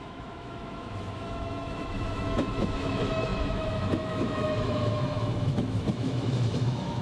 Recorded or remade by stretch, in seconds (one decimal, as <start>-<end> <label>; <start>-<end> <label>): 0.0-7.0 remade